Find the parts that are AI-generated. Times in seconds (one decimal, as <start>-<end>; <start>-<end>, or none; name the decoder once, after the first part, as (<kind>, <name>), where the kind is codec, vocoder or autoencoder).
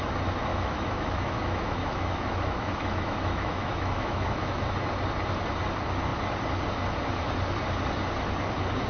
0.5-4.6 (autoencoder, DAC-VAE)